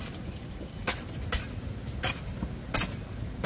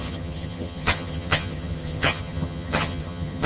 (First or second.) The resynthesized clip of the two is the second